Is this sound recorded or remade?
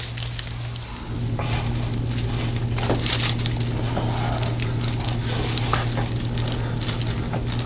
recorded